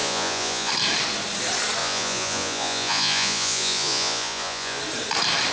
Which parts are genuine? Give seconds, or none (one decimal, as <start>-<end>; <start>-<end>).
0.7-1.8; 4.8-5.5

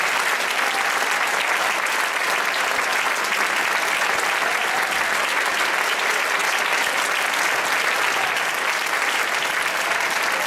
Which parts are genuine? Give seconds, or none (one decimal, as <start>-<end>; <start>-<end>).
0.0-10.5

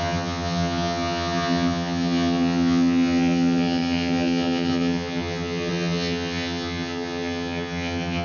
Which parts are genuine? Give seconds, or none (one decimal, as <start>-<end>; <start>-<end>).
none

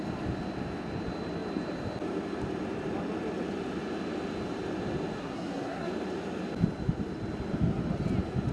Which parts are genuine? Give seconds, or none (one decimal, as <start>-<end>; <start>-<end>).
0.0-5.2; 5.9-8.5

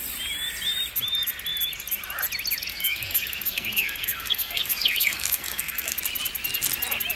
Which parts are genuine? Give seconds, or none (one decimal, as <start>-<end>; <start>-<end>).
0.0-2.7; 6.0-7.2

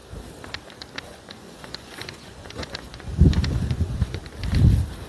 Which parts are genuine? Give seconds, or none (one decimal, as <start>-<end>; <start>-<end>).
0.0-1.1; 4.2-5.1